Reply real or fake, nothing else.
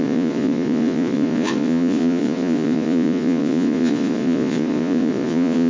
fake